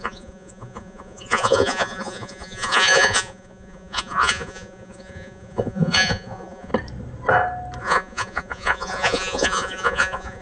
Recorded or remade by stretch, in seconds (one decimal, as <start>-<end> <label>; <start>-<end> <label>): 0.0-6.7 remade; 6.7-7.8 recorded; 7.8-10.4 remade